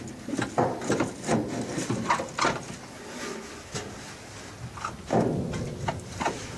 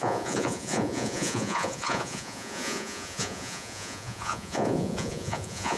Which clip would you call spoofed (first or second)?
second